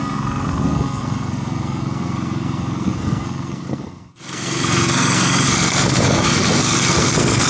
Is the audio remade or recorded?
remade